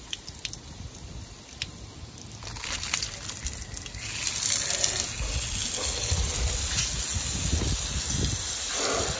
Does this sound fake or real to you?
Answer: real